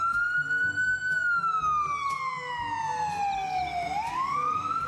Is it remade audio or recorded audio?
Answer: recorded